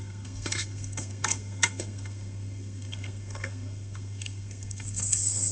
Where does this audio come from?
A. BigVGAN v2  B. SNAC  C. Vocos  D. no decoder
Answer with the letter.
B